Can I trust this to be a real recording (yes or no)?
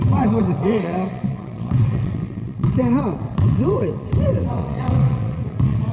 no